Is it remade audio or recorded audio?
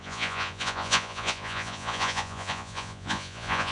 remade